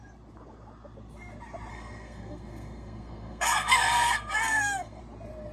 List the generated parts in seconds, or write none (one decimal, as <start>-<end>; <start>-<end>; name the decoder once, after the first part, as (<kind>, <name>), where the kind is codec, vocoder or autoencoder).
1.7-5.0 (codec, SNAC)